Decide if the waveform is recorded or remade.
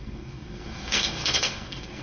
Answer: remade